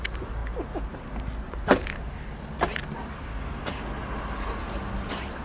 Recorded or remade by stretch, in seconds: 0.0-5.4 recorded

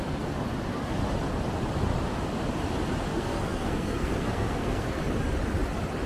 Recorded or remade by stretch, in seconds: 0.0-3.1 recorded; 3.1-5.0 remade; 5.0-6.1 recorded

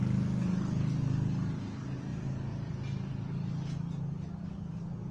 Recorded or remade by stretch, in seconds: 0.0-5.1 recorded

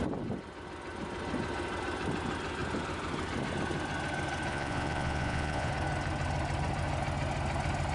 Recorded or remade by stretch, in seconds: 0.0-4.5 recorded; 4.5-5.7 remade; 5.7-7.9 recorded

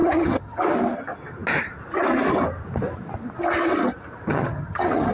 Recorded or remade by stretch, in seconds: 0.0-0.6 remade; 0.6-4.3 recorded; 4.3-5.1 remade